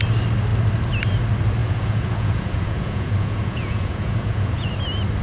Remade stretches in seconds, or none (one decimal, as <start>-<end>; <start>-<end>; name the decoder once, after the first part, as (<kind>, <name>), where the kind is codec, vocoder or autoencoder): 1.6-4.7 (vocoder, Vocos)

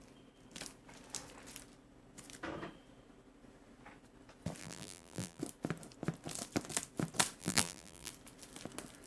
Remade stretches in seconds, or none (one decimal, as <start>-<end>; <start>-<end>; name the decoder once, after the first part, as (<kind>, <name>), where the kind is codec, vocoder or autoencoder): 4.6-5.4 (vocoder, BigVGAN v2); 7.4-8.1